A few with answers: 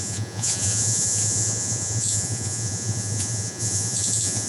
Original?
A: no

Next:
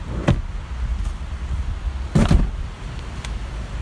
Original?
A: yes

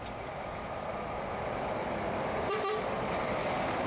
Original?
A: yes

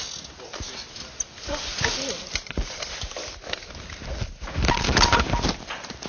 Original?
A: yes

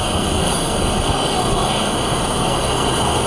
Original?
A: no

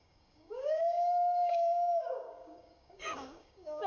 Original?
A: no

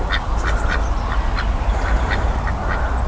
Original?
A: yes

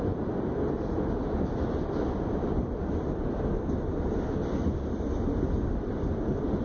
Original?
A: yes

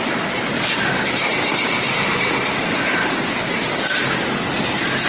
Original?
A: yes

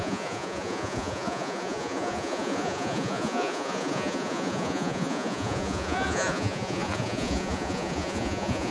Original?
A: no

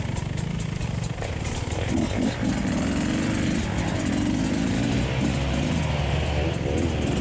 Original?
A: yes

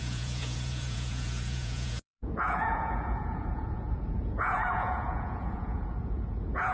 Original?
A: no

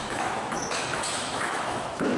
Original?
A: no